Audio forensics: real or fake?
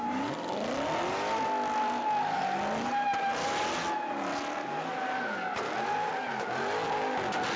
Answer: real